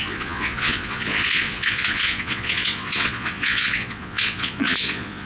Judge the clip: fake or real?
fake